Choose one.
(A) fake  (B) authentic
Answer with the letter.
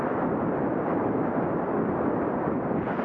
B